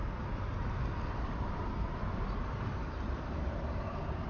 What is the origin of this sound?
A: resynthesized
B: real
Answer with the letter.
A